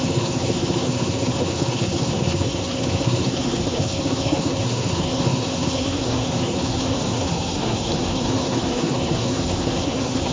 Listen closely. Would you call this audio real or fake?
fake